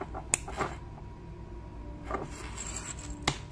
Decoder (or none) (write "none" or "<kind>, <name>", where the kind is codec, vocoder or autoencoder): none